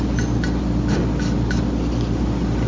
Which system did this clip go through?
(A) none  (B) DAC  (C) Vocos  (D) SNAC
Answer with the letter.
A